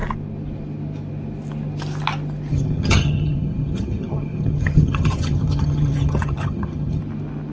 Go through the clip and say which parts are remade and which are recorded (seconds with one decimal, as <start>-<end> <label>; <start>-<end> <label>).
0.0-2.5 recorded; 2.5-7.0 remade; 7.0-7.5 recorded